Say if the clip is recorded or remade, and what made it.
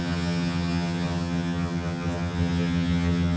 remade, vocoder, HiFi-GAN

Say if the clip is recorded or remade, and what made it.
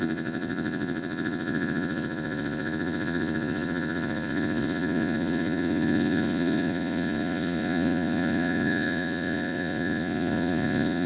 remade, vocoder, Vocos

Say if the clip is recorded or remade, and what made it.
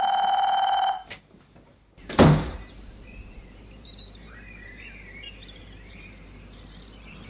remade, vocoder, BigVGAN v2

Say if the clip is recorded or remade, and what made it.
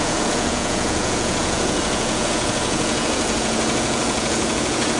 remade, vocoder, Vocos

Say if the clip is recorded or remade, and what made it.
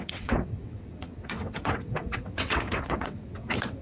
remade, vocoder, WaveNeXt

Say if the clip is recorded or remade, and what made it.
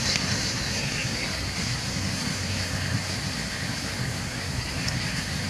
remade, codec, SNAC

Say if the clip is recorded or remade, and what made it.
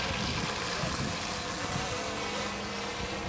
recorded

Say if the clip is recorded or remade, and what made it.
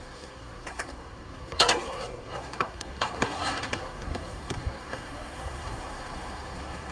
remade, codec, SNAC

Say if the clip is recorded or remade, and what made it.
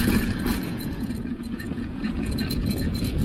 remade, vocoder, Vocos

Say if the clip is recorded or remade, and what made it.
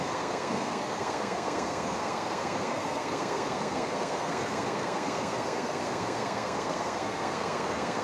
remade, codec, SNAC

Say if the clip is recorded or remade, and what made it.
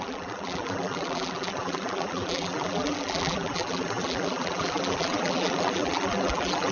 remade, vocoder, BigVGAN v2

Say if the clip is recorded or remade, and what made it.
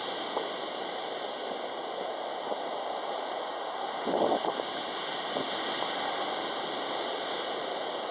recorded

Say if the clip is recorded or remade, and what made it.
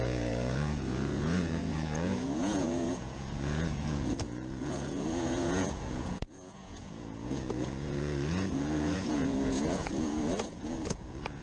remade, vocoder, Vocos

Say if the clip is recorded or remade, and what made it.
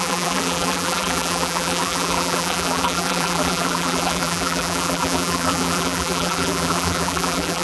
remade, vocoder, BigVGAN v2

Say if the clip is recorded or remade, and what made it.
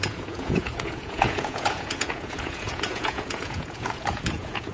remade, vocoder, Vocos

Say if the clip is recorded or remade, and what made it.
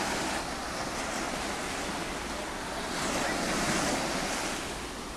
recorded